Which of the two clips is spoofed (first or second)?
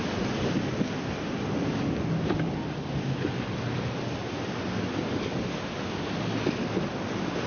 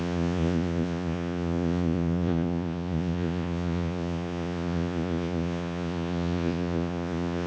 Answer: second